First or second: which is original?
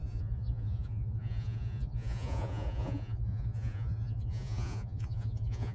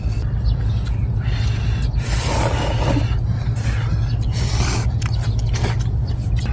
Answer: second